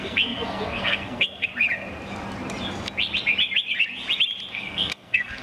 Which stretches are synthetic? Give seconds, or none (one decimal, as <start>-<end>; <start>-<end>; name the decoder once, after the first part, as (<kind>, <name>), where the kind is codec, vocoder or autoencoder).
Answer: 0.0-1.5 (codec, SNAC); 4.5-5.4